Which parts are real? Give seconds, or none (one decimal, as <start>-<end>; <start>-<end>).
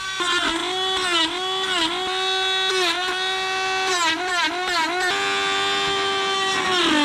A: 0.0-7.0